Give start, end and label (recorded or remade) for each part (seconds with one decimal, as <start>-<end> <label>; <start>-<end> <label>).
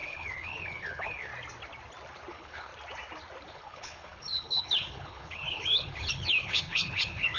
0.0-1.3 remade; 1.3-2.3 recorded; 2.3-2.7 remade; 2.7-3.5 recorded; 3.5-7.4 remade